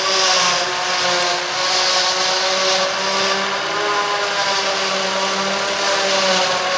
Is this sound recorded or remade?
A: recorded